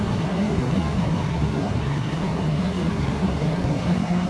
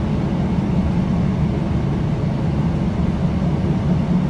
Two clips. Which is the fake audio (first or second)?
first